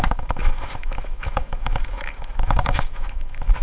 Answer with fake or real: fake